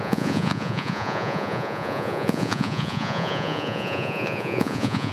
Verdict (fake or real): fake